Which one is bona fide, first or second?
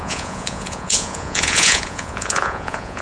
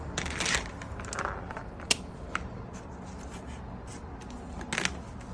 second